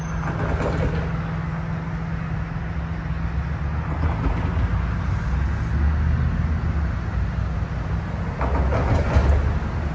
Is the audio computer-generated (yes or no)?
no